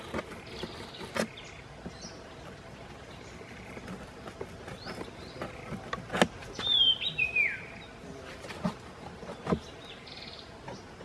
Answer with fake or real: real